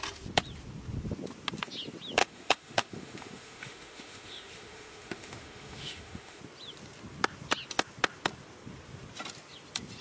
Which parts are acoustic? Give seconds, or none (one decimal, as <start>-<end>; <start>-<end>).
0.0-2.2; 6.4-10.0